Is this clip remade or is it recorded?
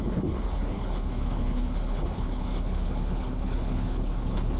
remade